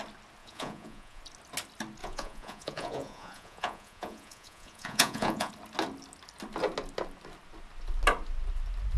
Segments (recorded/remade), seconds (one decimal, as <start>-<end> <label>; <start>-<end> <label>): 0.0-0.4 recorded; 0.4-1.2 remade; 1.2-2.0 recorded; 2.0-5.5 remade; 5.5-9.0 recorded